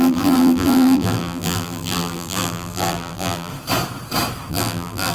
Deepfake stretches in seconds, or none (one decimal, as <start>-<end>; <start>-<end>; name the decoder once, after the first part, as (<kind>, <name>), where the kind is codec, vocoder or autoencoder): 0.0-3.5 (vocoder, BigVGAN v2); 4.5-5.1